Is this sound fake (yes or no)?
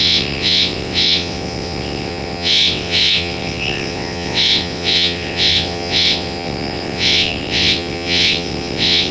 yes